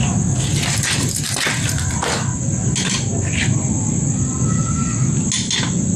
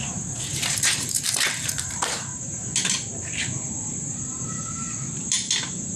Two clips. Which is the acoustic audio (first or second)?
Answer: first